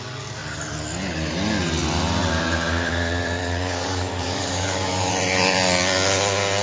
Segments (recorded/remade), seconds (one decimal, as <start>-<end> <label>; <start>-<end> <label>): 0.0-3.4 recorded; 3.4-5.1 remade; 5.1-6.6 recorded